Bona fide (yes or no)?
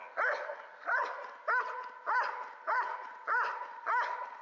yes